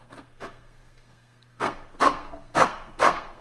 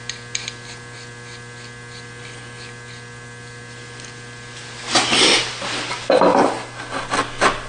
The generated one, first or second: first